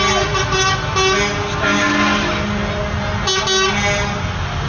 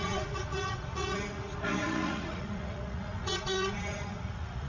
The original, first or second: first